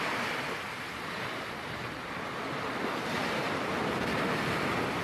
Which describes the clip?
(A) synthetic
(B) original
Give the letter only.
B